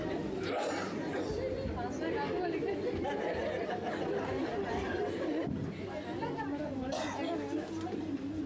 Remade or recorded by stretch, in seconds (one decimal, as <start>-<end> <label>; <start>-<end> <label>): 0.0-8.5 recorded